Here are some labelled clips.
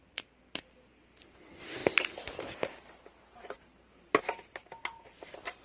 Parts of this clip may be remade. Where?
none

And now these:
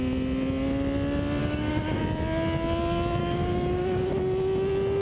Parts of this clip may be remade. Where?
1.4-2.0 (codec, DAC); 3.2-4.1

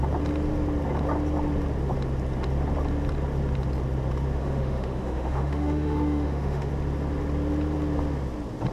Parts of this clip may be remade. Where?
4.4-6.7 (autoencoder, DAC-VAE)

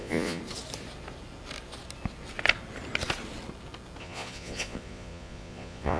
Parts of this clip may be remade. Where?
0.0-0.4 (vocoder, Vocos); 4.0-6.0